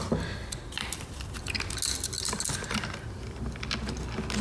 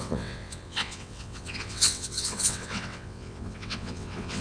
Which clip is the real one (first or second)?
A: first